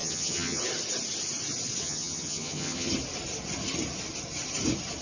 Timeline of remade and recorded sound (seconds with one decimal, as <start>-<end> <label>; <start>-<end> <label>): 0.0-0.6 remade; 0.6-1.8 recorded; 1.8-2.9 remade; 2.9-5.0 recorded

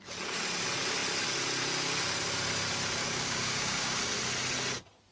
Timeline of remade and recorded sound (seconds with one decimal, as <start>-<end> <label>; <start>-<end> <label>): 0.0-3.0 recorded; 3.0-4.0 remade; 4.0-5.1 recorded

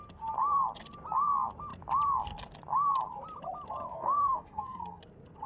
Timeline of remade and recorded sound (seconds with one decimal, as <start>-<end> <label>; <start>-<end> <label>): 0.0-3.9 recorded; 3.9-5.0 remade; 5.0-5.5 recorded

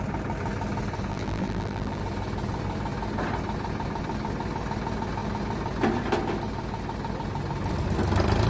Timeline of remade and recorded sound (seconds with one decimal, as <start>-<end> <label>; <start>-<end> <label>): 0.0-1.1 recorded; 1.1-2.0 remade; 2.0-8.5 recorded

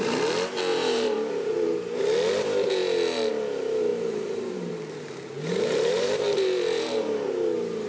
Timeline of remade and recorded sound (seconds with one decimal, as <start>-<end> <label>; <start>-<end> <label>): 0.0-0.7 recorded; 0.7-2.0 remade; 2.0-3.9 recorded; 3.9-7.3 remade; 7.3-7.9 recorded

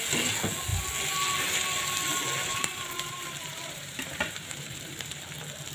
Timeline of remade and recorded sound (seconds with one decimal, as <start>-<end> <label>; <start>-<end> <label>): 0.0-2.4 recorded; 2.4-5.2 remade; 5.2-5.7 recorded

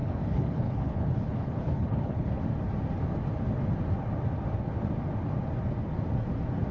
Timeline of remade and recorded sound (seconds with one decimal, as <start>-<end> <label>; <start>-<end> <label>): 0.0-2.4 remade; 2.4-6.7 recorded

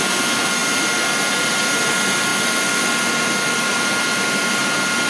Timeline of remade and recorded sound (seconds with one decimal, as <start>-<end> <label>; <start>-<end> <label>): 0.0-5.1 recorded